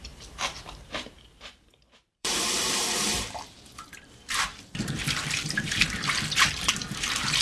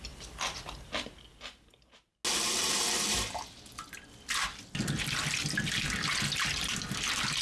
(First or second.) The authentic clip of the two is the second